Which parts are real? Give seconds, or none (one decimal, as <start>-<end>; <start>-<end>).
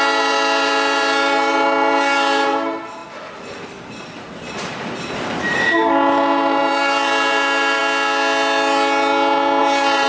3.0-3.9; 7.8-9.6